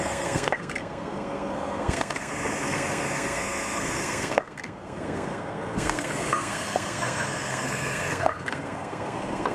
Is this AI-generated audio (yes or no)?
yes